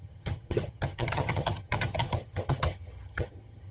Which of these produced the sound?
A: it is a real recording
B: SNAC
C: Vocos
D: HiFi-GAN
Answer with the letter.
D